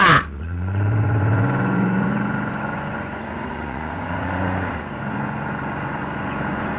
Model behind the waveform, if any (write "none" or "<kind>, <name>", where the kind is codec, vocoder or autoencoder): vocoder, Vocos